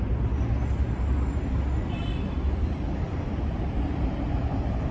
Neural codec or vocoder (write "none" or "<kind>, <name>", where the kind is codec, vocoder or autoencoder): none